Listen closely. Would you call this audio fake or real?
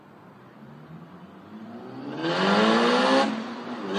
real